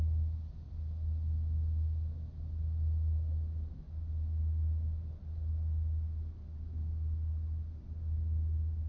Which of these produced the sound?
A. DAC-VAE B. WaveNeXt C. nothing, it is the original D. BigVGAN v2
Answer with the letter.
C